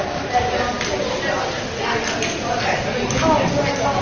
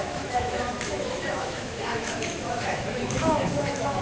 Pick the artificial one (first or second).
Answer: second